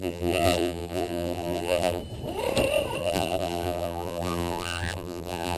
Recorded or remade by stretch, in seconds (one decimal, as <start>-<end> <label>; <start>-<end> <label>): 0.0-2.0 remade; 2.0-3.0 recorded; 3.0-5.6 remade